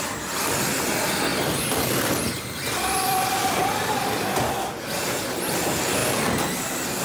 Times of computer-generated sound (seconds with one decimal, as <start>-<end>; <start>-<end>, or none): none